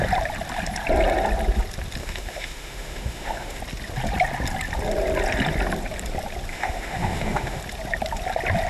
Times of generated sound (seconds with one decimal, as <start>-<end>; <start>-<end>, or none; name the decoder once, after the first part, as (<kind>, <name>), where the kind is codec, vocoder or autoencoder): 2.0-3.6 (autoencoder, DAC-VAE); 6.5-7.6